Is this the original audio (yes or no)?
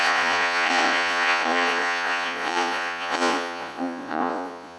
no